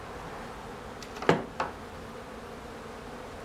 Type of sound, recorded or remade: recorded